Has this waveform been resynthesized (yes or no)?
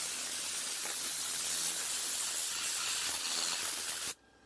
no